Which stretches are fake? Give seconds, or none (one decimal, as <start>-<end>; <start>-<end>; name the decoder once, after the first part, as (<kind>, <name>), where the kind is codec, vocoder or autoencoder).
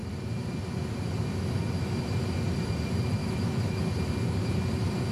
3.2-3.8 (autoencoder, DAC-VAE)